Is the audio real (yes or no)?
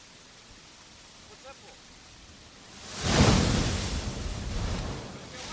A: yes